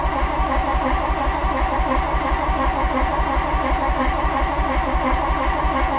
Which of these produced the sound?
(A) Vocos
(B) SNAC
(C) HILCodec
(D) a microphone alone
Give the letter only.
D